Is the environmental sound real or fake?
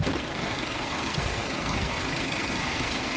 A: fake